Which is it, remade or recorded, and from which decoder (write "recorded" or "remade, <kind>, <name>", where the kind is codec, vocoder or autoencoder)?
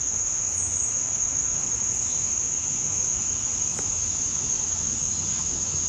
remade, autoencoder, DAC-VAE